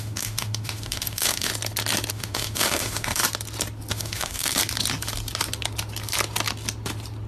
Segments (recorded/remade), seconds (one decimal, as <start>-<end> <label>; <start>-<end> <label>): 0.0-1.5 remade; 1.5-2.1 recorded; 2.1-3.2 remade; 3.2-3.9 recorded; 3.9-4.6 remade; 4.6-7.3 recorded